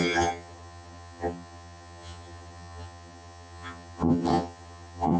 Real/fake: fake